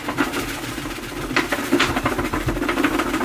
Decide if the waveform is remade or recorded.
remade